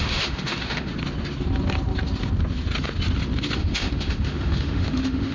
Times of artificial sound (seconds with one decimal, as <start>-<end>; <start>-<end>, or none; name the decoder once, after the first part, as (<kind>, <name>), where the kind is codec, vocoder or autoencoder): 0.0-0.9 (autoencoder, DAC-VAE); 3.6-5.3